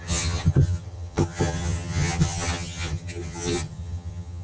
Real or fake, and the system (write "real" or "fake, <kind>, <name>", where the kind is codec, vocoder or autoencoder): fake, vocoder, HiFi-GAN